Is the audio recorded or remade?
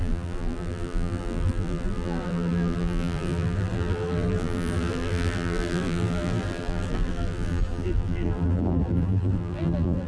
remade